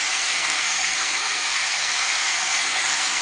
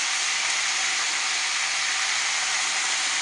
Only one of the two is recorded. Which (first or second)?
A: second